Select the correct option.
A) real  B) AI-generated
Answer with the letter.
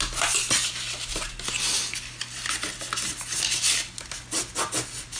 A